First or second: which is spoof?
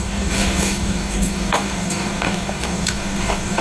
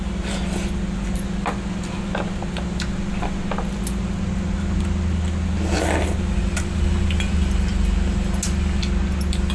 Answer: first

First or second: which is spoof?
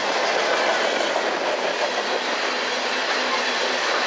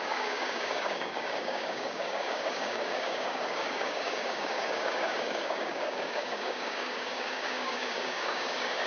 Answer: second